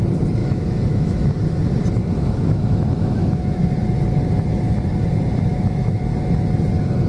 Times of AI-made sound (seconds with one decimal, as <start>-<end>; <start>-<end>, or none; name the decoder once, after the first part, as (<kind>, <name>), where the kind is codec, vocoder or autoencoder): 0.4-1.3 (autoencoder, DAC-VAE); 2.0-3.6; 5.5-6.0